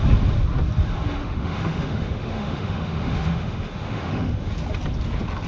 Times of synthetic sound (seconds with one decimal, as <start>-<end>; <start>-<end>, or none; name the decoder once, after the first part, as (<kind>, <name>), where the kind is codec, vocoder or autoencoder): 1.2-4.5 (autoencoder, DAC-VAE)